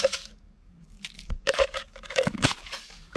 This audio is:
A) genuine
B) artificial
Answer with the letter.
B